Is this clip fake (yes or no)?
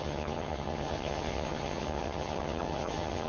yes